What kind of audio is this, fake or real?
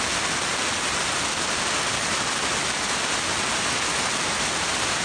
real